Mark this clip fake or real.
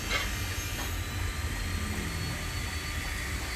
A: real